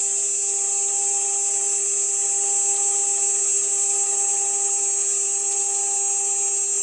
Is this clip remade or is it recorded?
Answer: recorded